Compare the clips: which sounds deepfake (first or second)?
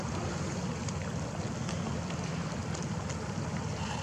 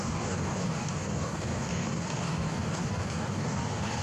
second